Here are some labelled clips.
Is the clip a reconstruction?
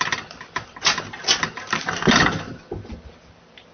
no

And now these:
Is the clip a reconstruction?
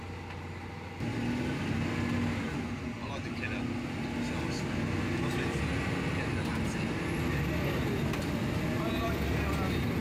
no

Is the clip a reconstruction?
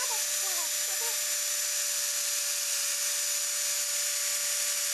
no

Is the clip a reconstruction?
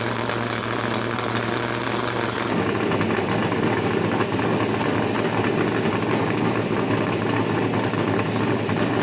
no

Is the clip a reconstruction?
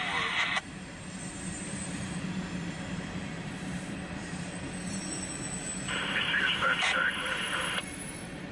yes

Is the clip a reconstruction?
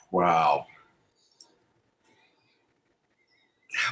no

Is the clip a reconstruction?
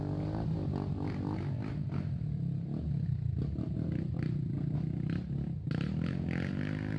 no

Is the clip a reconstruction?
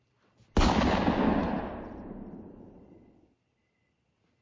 no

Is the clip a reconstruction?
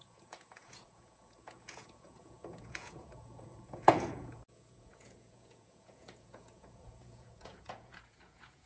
yes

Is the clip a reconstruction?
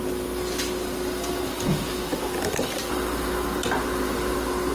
no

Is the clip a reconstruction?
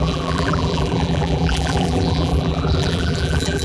yes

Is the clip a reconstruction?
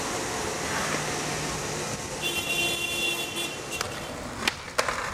no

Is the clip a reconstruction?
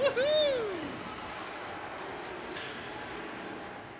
no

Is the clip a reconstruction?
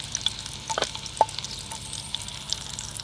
no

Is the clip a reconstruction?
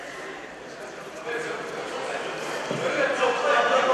yes